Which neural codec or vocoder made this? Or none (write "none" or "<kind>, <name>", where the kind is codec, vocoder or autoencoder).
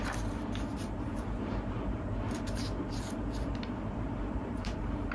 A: vocoder, BigVGAN v2